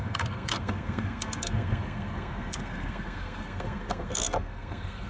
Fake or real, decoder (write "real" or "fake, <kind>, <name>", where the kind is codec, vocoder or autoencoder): fake, codec, SNAC